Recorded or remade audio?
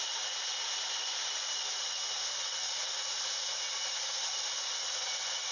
recorded